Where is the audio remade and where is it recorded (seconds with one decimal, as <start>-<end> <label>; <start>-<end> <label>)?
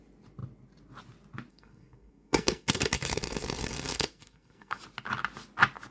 0.0-1.5 recorded; 1.5-4.8 remade; 4.8-5.9 recorded